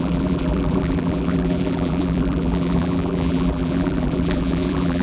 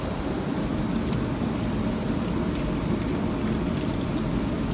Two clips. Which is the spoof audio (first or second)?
first